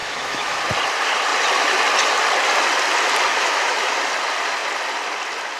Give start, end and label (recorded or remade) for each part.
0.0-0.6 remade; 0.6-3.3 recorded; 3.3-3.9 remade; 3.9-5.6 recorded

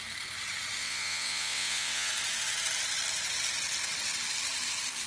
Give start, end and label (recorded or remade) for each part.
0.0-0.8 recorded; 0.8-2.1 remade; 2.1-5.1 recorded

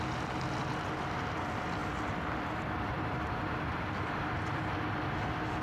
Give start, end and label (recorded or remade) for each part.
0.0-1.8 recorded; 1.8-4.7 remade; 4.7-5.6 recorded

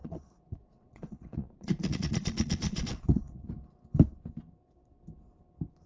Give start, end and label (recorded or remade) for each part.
0.0-3.5 remade; 3.5-5.9 recorded